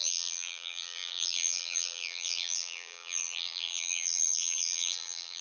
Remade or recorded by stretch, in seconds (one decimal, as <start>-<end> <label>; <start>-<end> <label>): 0.0-5.4 remade